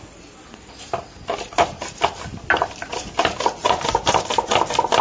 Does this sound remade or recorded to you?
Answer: recorded